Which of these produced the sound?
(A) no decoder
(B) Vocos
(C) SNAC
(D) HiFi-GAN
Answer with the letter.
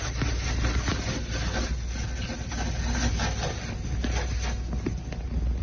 A